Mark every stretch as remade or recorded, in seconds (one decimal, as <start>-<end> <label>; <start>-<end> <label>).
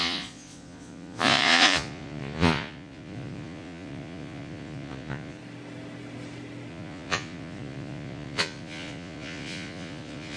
0.0-5.4 remade; 5.4-6.7 recorded; 6.7-10.4 remade